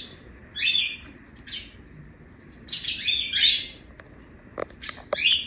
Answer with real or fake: real